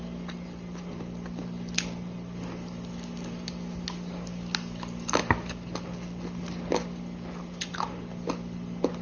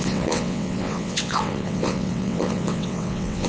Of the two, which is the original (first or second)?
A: first